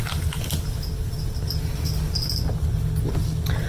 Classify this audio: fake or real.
real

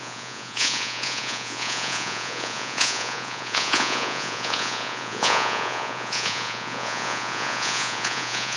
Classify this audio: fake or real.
fake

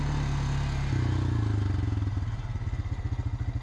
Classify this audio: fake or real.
real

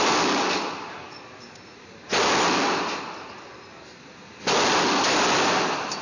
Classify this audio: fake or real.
real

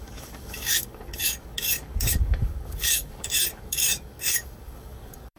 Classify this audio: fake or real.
fake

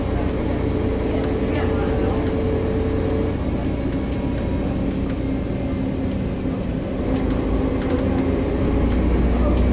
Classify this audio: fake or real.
real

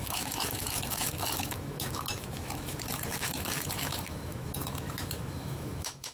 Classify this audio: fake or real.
fake